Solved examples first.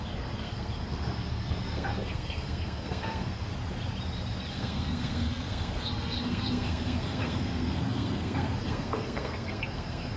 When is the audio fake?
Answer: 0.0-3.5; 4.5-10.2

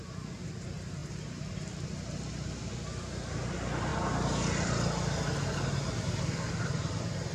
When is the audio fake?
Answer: none

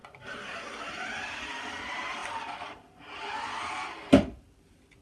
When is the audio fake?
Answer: 0.0-0.6

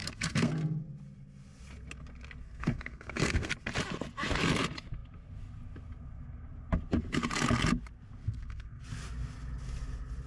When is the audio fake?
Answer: 0.0-0.5; 2.4-3.5; 8.2-8.8

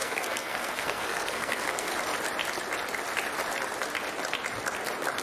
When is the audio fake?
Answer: 0.0-1.9

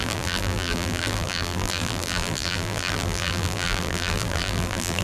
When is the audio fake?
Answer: 0.0-5.0

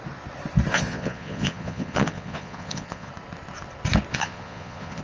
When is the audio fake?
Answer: 0.7-3.1; 4.1-5.0